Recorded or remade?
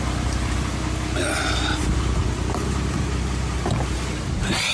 recorded